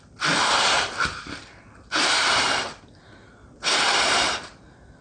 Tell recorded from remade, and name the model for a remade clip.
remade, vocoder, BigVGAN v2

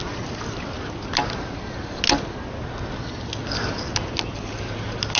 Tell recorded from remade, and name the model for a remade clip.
recorded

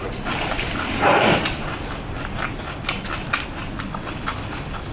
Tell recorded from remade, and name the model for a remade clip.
remade, vocoder, BigVGAN v2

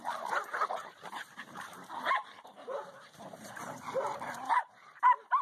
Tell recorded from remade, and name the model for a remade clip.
remade, vocoder, BigVGAN v2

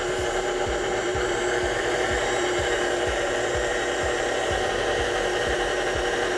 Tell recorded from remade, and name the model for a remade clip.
remade, vocoder, BigVGAN v2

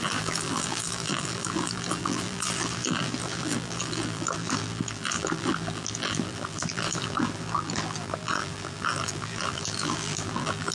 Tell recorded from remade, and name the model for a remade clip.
remade, vocoder, BigVGAN v2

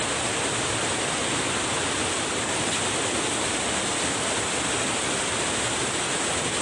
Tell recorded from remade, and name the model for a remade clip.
recorded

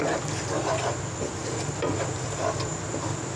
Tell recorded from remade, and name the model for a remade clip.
recorded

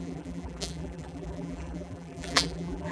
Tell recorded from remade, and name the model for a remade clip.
remade, vocoder, BigVGAN v2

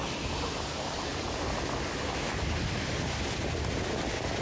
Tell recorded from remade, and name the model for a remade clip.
recorded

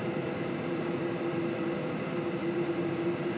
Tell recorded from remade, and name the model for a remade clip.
remade, vocoder, BigVGAN v2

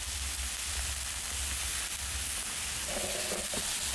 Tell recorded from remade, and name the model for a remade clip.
recorded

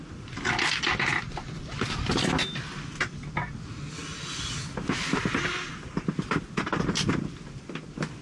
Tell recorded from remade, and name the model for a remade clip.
recorded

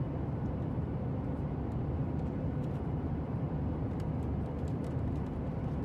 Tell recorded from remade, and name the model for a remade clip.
remade, vocoder, BigVGAN v2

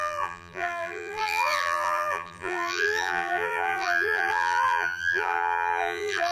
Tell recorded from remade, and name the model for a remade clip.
remade, vocoder, BigVGAN v2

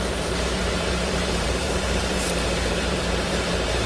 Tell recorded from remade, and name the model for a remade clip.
remade, vocoder, BigVGAN v2